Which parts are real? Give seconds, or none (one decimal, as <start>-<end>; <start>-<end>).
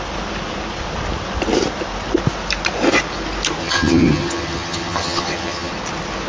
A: 0.0-3.6; 5.7-6.3